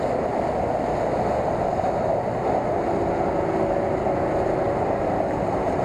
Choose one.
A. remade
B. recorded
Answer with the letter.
B